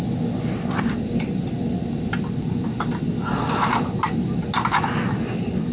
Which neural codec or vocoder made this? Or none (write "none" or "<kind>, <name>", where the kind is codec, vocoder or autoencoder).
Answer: none